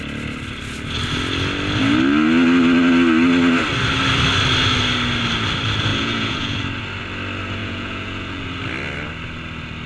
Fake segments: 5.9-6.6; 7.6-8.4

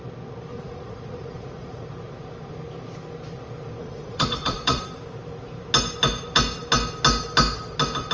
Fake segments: 0.5-1.8; 3.8-4.8

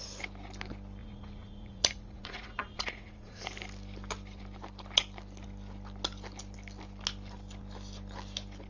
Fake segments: 1.0-3.4

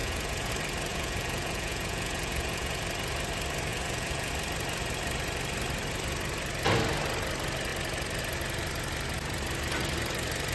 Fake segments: 0.0-0.5; 0.9-2.8; 3.7-4.3

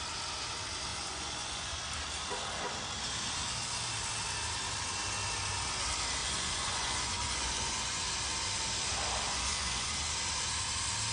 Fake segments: 0.9-1.8; 6.2-8.0; 9.3-9.9